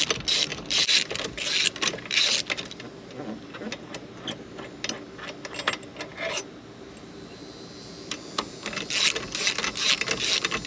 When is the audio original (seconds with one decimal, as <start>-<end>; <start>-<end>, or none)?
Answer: 0.0-0.5; 2.9-10.7

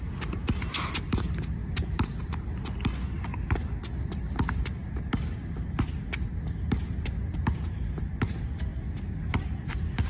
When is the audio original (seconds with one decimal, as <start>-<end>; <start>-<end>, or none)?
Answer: 0.0-10.1

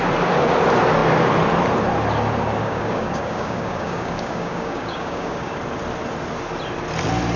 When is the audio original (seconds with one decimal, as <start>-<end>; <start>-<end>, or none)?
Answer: 0.0-2.6; 5.6-7.4

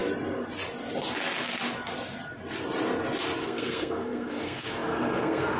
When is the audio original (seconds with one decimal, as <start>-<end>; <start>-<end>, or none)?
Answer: 0.0-3.4

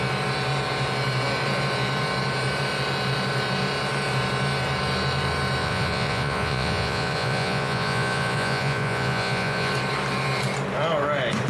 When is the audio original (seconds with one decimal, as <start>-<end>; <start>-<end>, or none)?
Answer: 0.0-5.6; 9.7-11.5